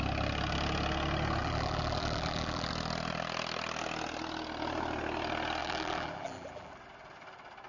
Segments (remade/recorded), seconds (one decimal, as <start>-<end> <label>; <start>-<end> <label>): 0.0-1.4 recorded; 1.4-2.7 remade; 2.7-5.6 recorded; 5.6-6.7 remade; 6.7-7.7 recorded